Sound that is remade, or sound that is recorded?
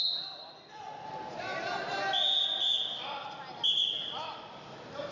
recorded